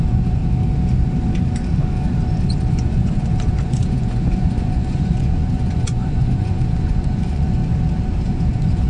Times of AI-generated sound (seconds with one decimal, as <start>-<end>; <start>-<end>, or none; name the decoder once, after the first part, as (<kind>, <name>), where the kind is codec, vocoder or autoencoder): 0.0-0.4 (vocoder, Vocos); 2.5-7.6; 8.2-8.9